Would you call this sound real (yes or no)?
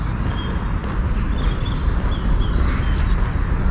yes